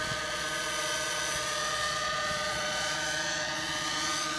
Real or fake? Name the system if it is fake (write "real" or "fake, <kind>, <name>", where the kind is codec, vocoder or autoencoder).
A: fake, vocoder, Vocos